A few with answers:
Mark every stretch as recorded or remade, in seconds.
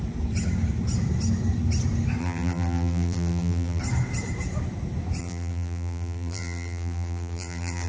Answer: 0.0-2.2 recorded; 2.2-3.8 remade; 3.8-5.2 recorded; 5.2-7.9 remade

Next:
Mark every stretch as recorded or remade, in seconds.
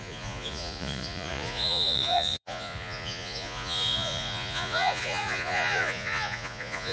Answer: 0.0-6.9 remade